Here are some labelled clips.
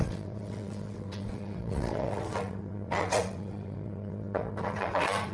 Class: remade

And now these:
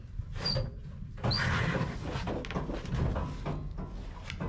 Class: recorded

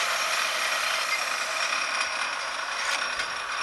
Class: remade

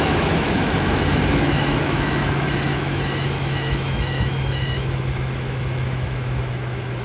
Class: remade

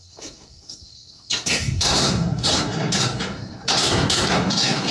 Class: remade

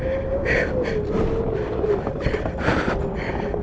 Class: recorded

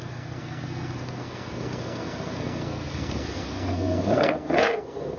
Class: remade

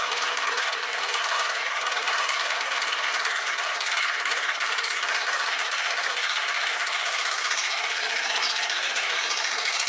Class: remade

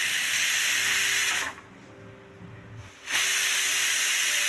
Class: recorded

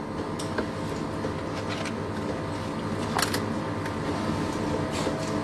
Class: recorded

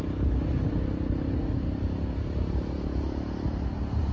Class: recorded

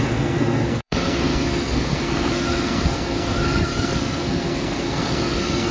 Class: remade